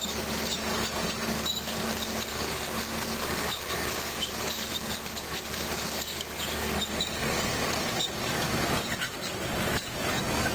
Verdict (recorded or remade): remade